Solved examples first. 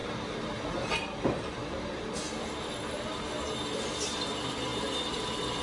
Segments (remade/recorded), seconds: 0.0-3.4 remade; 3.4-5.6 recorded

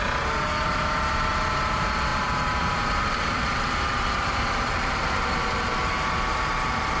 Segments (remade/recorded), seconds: 0.0-2.1 recorded; 2.1-5.4 remade; 5.4-7.0 recorded

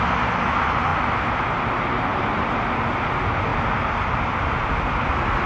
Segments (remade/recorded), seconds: 0.0-0.9 recorded; 0.9-1.5 remade; 1.5-2.1 recorded; 2.1-3.1 remade; 3.1-5.5 recorded